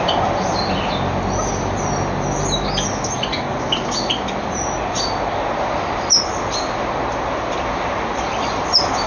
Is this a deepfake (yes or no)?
no